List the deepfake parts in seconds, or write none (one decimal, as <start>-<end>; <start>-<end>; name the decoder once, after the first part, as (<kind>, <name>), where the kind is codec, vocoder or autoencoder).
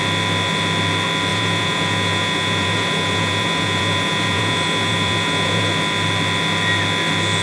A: 1.3-5.7 (vocoder, Vocos)